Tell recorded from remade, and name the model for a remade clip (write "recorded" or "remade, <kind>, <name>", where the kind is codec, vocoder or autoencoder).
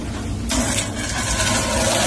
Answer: recorded